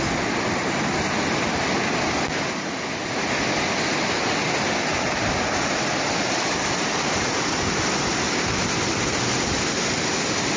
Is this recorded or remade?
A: recorded